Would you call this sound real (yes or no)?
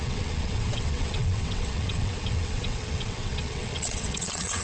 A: no